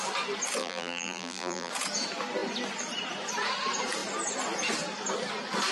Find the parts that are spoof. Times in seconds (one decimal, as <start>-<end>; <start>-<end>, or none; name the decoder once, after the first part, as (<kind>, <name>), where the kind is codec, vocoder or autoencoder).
0.6-1.7 (vocoder, BigVGAN v2)